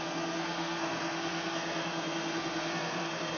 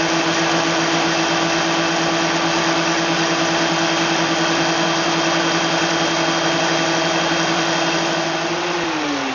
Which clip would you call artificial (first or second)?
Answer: first